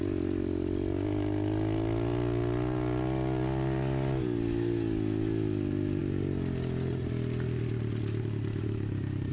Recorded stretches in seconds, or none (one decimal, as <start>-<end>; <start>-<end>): 0.0-9.3